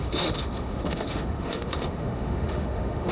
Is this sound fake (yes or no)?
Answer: yes